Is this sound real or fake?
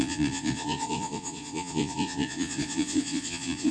fake